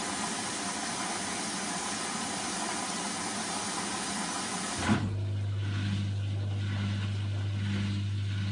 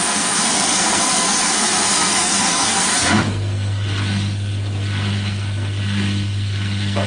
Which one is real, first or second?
first